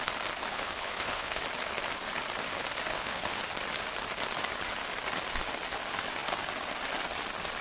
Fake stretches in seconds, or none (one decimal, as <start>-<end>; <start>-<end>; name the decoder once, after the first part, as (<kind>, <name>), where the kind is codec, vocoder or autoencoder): 0.5-1.4 (codec, HILCodec); 2.9-3.4